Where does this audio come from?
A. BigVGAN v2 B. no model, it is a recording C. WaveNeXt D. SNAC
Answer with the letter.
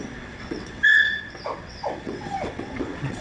C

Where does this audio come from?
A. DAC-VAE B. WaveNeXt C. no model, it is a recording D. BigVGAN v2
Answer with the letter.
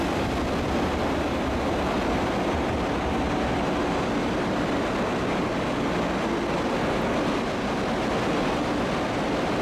C